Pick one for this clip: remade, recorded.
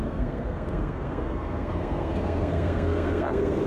remade